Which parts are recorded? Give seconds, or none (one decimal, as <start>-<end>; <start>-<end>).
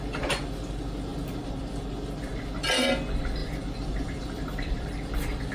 0.0-3.4; 4.9-5.5